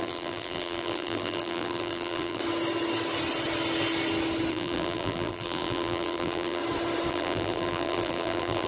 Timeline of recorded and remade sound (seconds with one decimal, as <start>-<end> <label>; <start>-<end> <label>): 0.0-2.4 remade; 2.4-4.5 recorded; 4.5-6.6 remade; 6.6-7.1 recorded; 7.1-8.7 remade